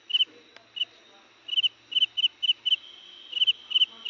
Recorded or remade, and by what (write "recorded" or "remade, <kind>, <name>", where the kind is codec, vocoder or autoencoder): recorded